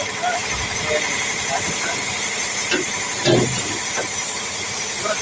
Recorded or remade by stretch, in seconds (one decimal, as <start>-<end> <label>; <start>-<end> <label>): 0.0-5.2 recorded